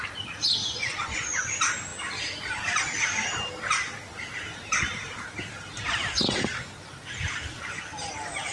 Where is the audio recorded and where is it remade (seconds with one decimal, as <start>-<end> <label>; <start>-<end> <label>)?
0.0-0.6 recorded; 0.6-1.5 remade; 1.5-8.5 recorded